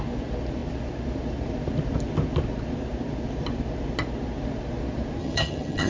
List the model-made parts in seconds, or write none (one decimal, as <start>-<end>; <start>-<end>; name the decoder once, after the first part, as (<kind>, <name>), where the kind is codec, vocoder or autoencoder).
5.2-5.9 (vocoder, HiFi-GAN)